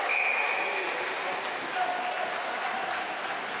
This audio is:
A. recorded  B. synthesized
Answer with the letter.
A